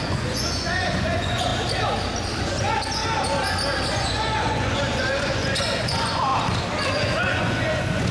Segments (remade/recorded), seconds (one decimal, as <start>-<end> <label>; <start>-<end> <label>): 0.0-1.5 remade; 1.5-2.4 recorded; 2.4-3.0 remade; 3.0-3.9 recorded; 3.9-6.3 remade; 6.3-6.9 recorded; 6.9-8.1 remade